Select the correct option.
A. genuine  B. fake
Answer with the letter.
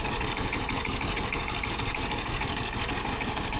B